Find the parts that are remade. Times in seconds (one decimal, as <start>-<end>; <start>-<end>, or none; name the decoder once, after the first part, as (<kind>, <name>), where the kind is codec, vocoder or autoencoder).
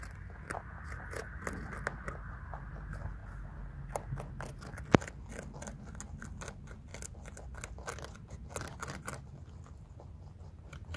none